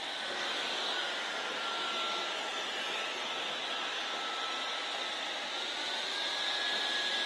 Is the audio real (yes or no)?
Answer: yes